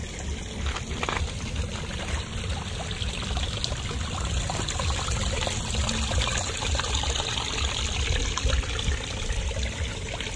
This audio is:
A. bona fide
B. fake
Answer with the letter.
A